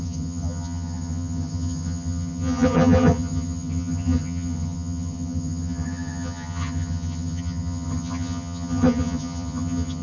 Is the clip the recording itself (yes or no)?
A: no